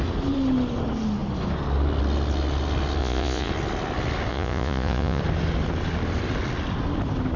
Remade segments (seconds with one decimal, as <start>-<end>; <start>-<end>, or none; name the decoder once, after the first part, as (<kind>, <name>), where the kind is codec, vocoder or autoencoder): 3.0-3.5 (vocoder, Vocos); 4.3-5.2